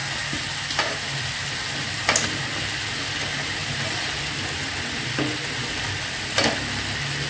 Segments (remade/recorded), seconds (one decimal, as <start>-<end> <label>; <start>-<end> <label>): 0.0-7.3 recorded